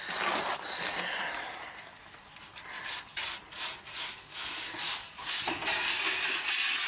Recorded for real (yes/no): yes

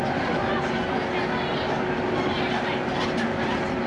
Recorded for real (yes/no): yes